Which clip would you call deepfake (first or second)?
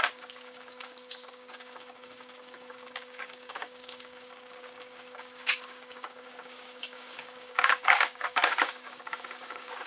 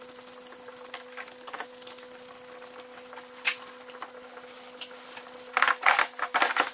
first